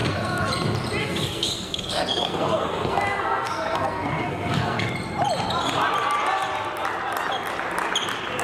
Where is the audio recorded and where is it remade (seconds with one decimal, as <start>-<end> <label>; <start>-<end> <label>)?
0.0-0.5 remade; 0.5-1.0 recorded; 1.0-4.9 remade; 4.9-8.4 recorded